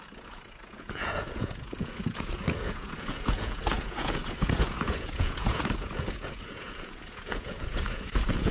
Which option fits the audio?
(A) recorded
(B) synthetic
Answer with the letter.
B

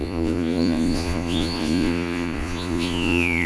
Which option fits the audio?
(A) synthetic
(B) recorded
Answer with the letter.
A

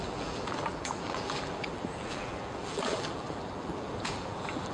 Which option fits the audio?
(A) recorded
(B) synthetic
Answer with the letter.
B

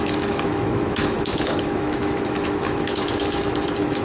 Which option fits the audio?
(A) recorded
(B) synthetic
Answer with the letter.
B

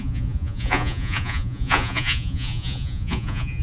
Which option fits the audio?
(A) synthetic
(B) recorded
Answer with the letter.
A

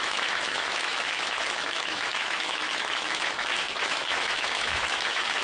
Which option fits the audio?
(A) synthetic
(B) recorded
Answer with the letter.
A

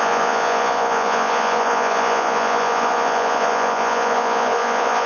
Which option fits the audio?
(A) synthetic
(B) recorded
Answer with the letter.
A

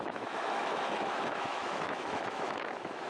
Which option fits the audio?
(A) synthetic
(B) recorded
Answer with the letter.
A